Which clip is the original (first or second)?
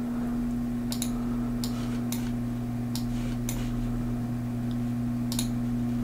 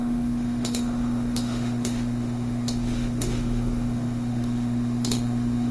first